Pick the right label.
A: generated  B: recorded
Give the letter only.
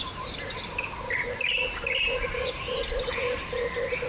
B